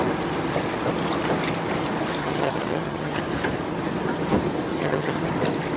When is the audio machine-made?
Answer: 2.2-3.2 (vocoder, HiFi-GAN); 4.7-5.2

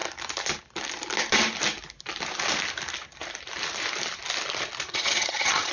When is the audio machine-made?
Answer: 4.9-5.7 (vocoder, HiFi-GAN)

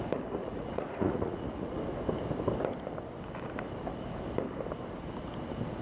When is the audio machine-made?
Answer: 0.4-1.8 (vocoder, Vocos)

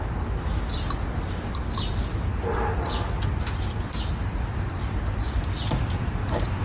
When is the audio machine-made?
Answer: none

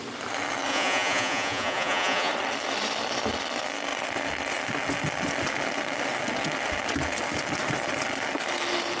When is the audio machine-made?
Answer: 0.7-2.3 (vocoder, Vocos)

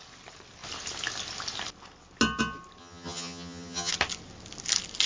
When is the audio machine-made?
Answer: 2.8-3.9 (vocoder, HiFi-GAN)